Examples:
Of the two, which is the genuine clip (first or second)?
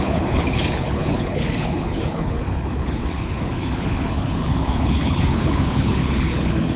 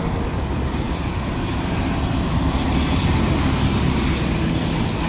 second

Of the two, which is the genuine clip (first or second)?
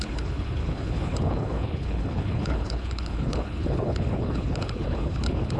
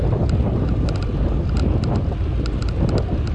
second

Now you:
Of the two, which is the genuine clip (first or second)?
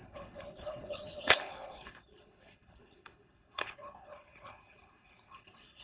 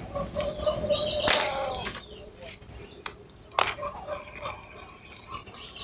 second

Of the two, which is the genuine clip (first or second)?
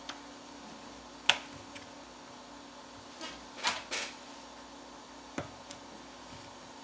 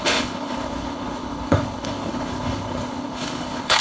first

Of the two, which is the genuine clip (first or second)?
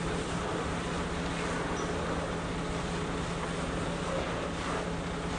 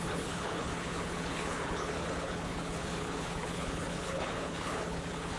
first